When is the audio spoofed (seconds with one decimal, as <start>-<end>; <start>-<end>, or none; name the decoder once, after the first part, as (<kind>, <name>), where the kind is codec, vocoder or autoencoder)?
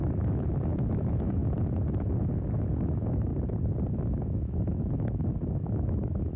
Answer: 0.0-1.4 (autoencoder, DAC-VAE); 2.6-3.3; 3.9-6.4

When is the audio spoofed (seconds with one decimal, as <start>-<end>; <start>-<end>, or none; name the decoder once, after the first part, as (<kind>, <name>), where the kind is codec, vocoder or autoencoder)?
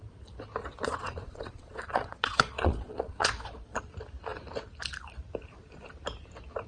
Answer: 0.6-3.8 (vocoder, Vocos)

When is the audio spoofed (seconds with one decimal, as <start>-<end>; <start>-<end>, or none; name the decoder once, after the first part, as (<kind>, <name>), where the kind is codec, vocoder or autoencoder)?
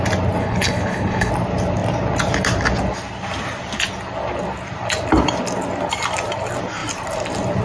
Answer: 0.4-1.3 (codec, HILCodec)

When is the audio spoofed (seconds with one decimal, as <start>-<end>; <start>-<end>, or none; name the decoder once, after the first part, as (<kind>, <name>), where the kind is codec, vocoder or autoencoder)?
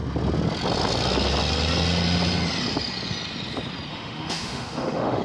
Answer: 3.9-5.2 (autoencoder, DAC-VAE)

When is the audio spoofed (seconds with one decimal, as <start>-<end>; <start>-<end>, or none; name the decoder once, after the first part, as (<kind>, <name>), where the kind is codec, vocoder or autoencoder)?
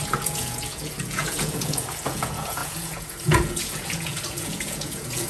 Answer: 0.0-5.3 (vocoder, Vocos)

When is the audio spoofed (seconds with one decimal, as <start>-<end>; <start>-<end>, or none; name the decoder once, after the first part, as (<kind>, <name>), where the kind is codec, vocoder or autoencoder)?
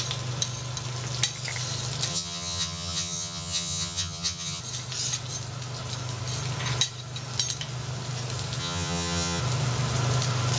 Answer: 2.1-4.6 (vocoder, HiFi-GAN); 8.6-9.4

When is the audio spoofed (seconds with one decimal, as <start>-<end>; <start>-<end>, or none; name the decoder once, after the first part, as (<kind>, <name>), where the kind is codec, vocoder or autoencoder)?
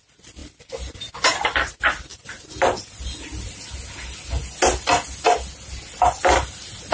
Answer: none